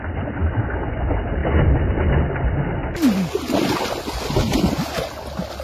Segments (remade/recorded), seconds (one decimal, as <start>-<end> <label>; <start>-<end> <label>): 0.0-0.4 recorded; 0.4-0.9 remade; 0.9-5.6 recorded